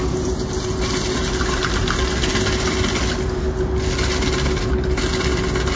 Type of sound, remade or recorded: recorded